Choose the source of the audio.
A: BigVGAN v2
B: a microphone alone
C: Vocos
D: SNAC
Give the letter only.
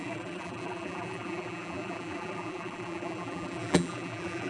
A